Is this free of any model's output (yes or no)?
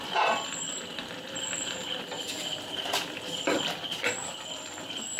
yes